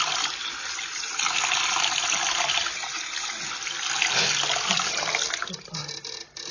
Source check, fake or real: real